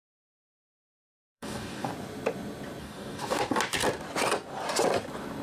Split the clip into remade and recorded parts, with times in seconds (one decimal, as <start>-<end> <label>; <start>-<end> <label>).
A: 0.0-0.8 recorded; 0.8-1.9 remade; 1.9-2.8 recorded; 2.8-3.5 remade; 3.5-5.4 recorded